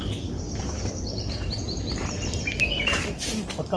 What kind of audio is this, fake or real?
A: fake